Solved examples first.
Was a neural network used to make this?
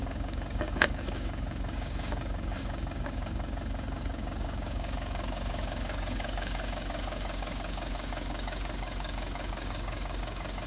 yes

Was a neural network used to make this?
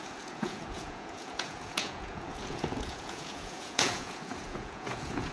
yes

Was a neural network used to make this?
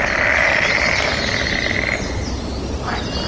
no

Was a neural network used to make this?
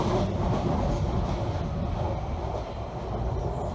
no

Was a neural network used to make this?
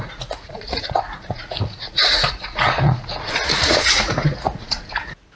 yes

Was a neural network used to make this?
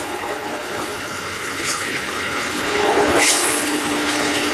yes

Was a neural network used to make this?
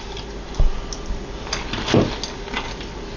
no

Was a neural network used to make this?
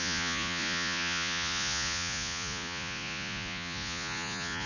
yes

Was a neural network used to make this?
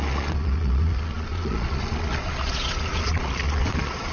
yes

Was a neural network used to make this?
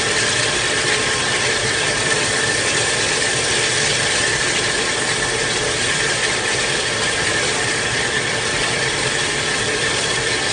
no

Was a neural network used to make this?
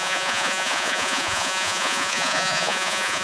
yes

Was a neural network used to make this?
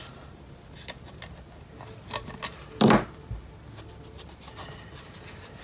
no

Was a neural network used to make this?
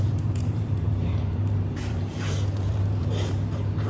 yes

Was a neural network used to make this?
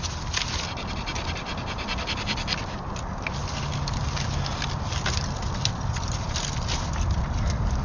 no